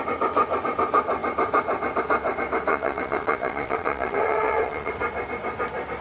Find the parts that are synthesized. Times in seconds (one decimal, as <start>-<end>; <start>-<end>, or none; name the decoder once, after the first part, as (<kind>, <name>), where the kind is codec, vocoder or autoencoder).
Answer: 2.7-4.9 (vocoder, WaveNeXt)